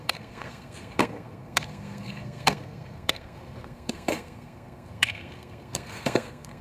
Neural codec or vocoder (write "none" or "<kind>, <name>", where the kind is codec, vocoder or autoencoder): codec, SNAC